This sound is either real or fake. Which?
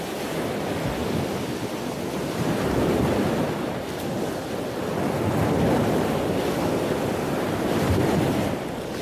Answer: real